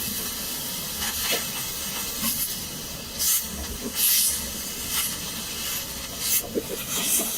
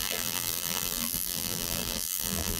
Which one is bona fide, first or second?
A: first